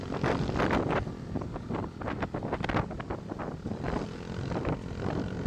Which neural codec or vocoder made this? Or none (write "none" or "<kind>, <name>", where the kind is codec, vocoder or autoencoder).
none